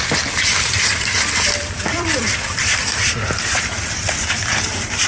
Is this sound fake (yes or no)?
yes